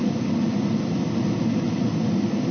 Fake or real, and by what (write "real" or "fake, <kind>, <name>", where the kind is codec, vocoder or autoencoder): real